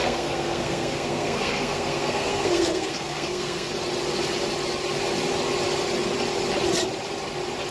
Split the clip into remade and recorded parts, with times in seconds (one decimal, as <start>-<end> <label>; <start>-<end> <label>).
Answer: 0.0-3.7 remade; 3.7-7.7 recorded